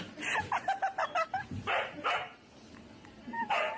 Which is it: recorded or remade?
recorded